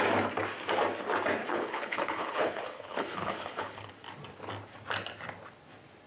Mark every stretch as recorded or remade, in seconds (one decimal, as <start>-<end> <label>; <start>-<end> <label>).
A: 0.0-1.4 recorded; 1.4-3.9 remade; 3.9-6.1 recorded